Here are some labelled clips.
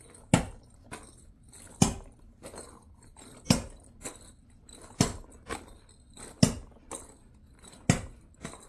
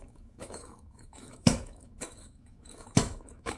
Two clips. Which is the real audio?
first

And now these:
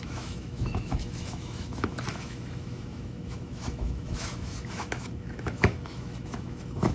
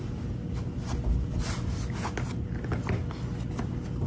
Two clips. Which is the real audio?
second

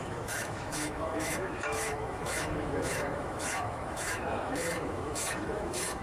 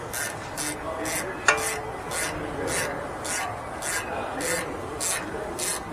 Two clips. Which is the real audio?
second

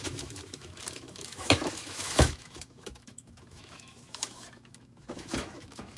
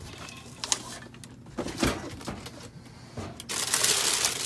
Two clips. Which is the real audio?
second